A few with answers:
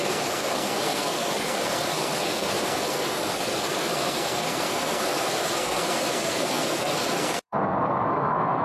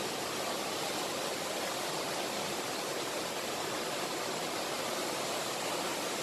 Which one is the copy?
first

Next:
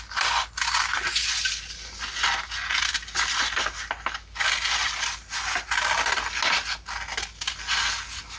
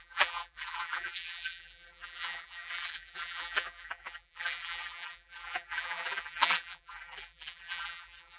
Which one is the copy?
second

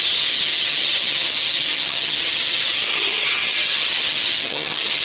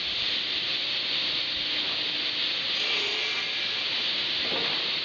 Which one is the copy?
first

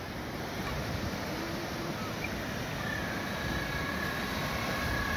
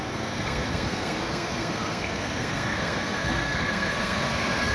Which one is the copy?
second